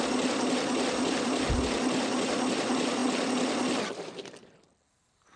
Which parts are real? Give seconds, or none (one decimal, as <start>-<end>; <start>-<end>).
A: 0.0-5.4